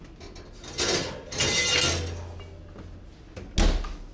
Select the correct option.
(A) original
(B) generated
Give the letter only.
A